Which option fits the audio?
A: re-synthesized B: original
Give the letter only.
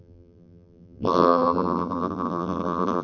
A